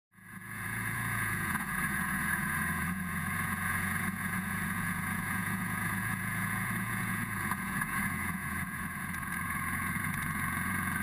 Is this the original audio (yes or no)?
no